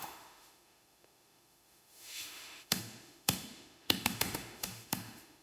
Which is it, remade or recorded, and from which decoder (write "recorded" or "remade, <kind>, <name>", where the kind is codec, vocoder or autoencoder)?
remade, autoencoder, DAC-VAE